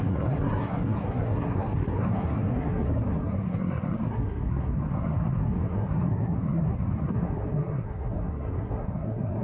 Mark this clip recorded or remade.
remade